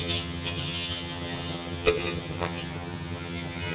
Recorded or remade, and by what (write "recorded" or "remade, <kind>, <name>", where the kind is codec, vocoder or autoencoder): remade, vocoder, HiFi-GAN